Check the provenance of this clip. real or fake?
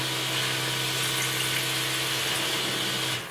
real